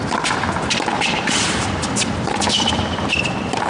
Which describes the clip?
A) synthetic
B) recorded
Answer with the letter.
B